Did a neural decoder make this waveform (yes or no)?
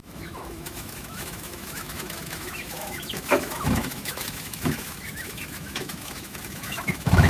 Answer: yes